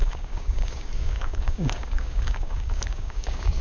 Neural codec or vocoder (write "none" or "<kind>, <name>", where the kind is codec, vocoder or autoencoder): codec, DAC